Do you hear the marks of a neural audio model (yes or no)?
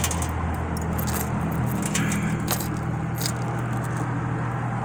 no